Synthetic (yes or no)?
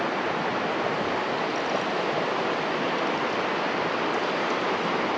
no